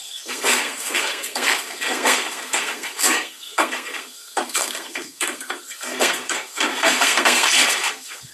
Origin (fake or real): fake